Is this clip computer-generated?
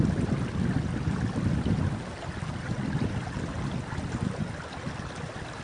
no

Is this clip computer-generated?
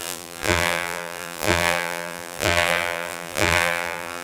yes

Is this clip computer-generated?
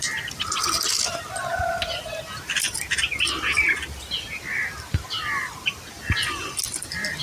no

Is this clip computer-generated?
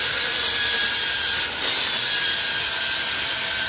no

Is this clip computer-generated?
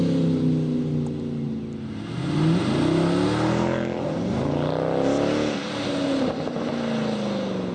no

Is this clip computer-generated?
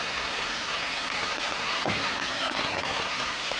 yes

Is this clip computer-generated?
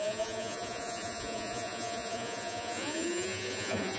yes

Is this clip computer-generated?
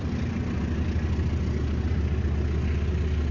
no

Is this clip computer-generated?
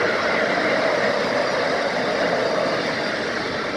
no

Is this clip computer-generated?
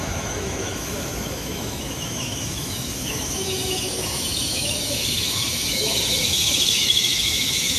yes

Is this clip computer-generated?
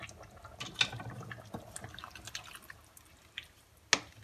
no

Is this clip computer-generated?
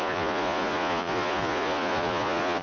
yes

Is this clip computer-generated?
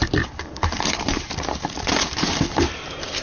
yes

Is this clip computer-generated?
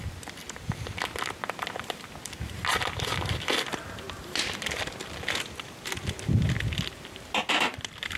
no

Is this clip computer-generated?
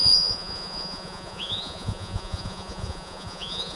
yes